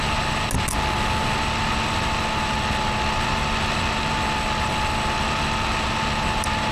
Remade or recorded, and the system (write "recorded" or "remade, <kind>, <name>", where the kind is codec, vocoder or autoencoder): recorded